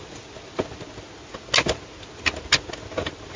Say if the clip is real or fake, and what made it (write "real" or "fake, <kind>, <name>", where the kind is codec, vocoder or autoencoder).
real